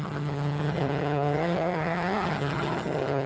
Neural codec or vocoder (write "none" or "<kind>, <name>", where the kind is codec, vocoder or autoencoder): vocoder, HiFi-GAN